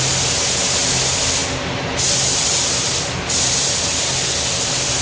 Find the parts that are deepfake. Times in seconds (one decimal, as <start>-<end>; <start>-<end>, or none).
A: none